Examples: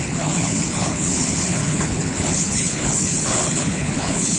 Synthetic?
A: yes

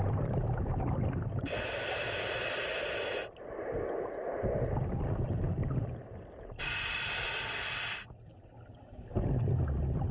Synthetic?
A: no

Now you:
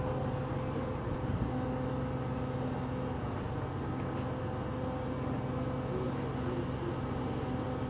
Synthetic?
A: no